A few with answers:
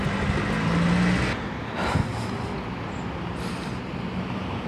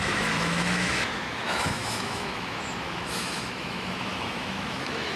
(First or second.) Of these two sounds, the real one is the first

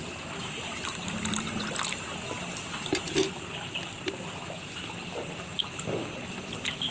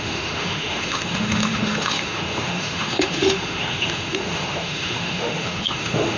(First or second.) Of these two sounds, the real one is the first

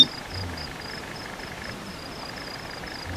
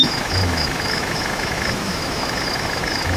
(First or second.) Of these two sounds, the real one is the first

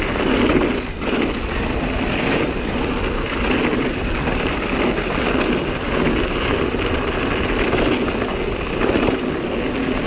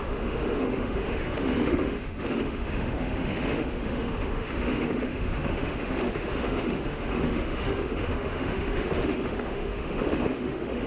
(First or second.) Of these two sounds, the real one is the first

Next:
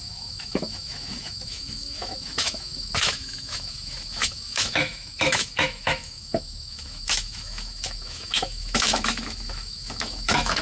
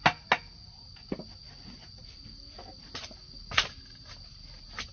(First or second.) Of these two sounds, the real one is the second